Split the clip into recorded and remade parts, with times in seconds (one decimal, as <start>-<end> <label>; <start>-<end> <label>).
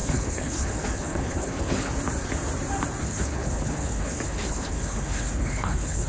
0.0-1.9 remade; 1.9-3.0 recorded; 3.0-6.1 remade